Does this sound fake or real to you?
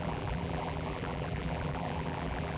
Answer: fake